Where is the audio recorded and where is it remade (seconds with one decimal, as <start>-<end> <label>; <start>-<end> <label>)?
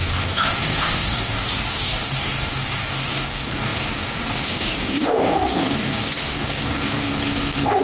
0.0-7.8 remade